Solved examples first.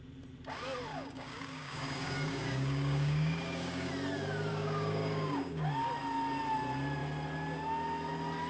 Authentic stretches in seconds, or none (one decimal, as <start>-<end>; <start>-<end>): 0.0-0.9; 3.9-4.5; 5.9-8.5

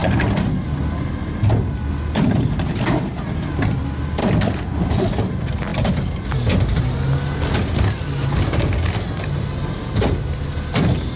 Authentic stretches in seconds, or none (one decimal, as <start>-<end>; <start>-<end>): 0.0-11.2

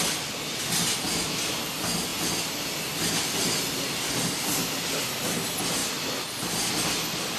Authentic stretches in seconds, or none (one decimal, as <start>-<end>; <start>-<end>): 0.0-7.4

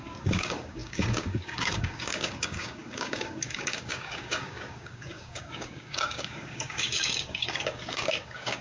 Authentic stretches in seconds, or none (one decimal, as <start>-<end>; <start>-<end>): none